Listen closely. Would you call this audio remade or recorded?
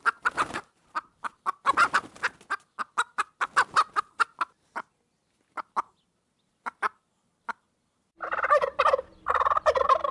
recorded